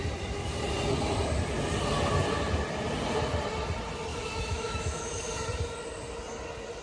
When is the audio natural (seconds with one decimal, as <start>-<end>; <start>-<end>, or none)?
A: 0.0-4.1; 5.1-6.8